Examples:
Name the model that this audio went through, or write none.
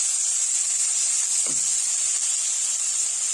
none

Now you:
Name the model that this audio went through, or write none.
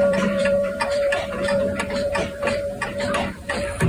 vocoder, BigVGAN v2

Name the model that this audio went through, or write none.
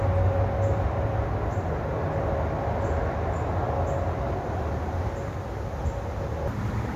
none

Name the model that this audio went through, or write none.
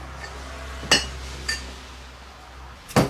none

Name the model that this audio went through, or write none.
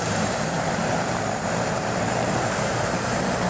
vocoder, BigVGAN v2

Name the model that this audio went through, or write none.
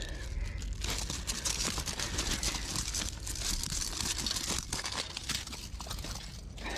none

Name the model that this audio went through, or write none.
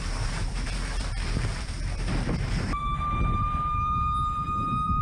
vocoder, BigVGAN v2